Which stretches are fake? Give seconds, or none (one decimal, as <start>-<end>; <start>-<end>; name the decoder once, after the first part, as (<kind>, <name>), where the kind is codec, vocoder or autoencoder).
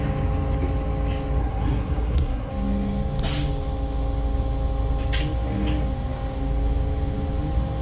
1.4-2.5 (codec, SNAC)